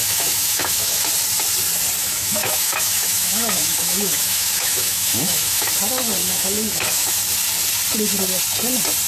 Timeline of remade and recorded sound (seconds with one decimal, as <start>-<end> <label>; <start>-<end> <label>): 0.0-1.1 remade; 1.1-2.0 recorded; 2.0-5.7 remade; 5.7-6.2 recorded; 6.2-7.2 remade; 7.2-9.1 recorded